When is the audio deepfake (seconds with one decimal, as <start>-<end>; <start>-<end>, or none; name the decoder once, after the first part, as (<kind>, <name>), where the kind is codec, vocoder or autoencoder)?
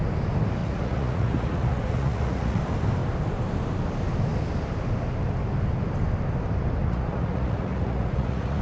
0.6-2.6 (vocoder, Vocos); 6.8-8.6